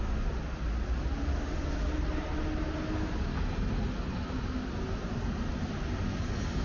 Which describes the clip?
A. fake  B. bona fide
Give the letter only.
B